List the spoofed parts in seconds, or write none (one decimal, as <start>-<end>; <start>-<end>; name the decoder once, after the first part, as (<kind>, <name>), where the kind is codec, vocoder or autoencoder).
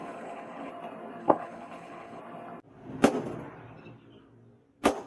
0.0-0.7 (codec, HILCodec); 1.2-2.2